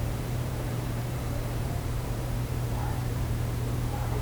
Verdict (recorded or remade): remade